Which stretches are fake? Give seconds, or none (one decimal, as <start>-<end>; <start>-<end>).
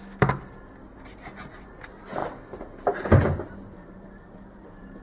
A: none